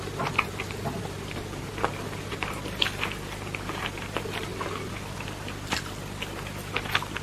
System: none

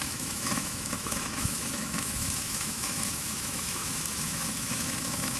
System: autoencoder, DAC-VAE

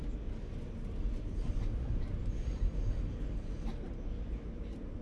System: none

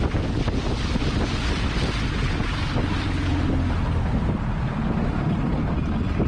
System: none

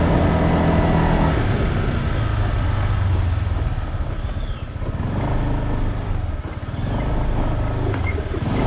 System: none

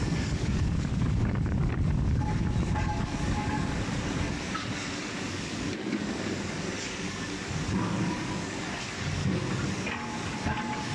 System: codec, DAC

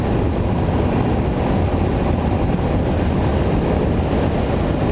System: none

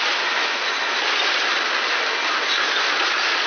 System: none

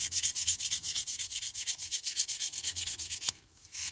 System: codec, SNAC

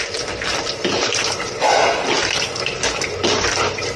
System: none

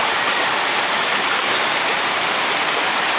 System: vocoder, BigVGAN v2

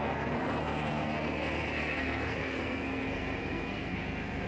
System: codec, SNAC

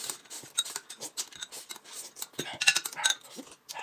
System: none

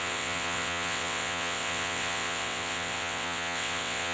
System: vocoder, WaveNeXt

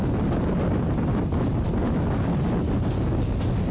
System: none